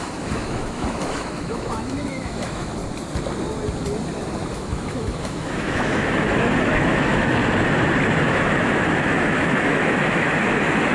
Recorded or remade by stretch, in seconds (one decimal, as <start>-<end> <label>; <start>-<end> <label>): 0.0-2.8 remade; 2.8-4.5 recorded; 4.5-7.4 remade; 7.4-8.2 recorded; 8.2-10.9 remade